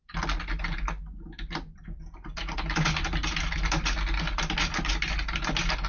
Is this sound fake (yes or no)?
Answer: no